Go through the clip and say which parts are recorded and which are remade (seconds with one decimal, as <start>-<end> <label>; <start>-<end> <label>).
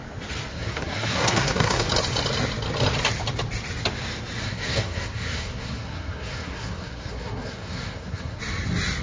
0.0-0.5 recorded; 0.5-1.9 remade; 1.9-4.4 recorded; 4.4-8.4 remade; 8.4-9.0 recorded